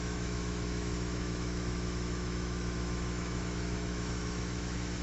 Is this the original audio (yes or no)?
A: no